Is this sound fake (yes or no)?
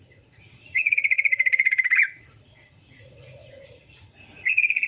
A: yes